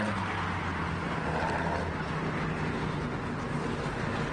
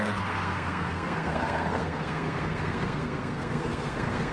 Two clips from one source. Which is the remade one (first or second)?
second